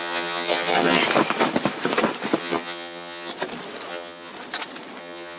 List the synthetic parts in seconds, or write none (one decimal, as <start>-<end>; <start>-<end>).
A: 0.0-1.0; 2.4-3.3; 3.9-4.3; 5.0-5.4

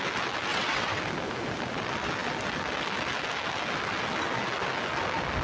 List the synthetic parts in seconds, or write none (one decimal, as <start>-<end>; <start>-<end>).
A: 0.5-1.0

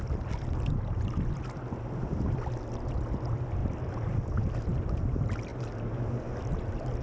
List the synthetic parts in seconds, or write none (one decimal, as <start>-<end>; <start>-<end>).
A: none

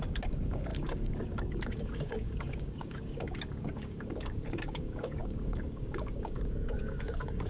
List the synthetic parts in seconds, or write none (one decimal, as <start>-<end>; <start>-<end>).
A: 0.0-7.5

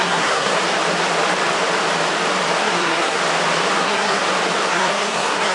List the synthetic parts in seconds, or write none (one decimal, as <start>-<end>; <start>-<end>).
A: 0.0-0.6; 2.6-3.2; 3.8-4.2; 4.7-5.5